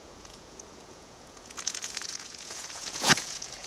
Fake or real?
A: fake